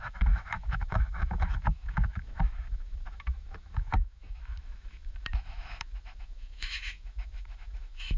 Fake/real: fake